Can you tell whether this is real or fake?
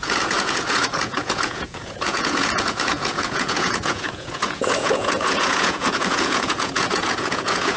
fake